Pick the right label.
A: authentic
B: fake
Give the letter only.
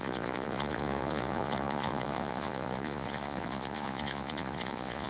B